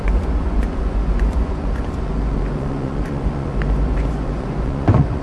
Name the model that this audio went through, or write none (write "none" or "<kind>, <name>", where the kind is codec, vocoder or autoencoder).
vocoder, Vocos